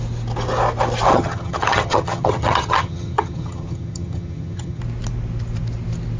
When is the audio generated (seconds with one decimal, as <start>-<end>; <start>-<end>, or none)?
1.1-4.8